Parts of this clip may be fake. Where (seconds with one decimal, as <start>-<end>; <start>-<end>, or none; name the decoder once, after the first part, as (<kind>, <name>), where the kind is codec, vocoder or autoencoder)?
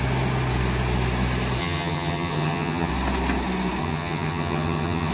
1.6-2.9 (vocoder, HiFi-GAN); 3.8-5.1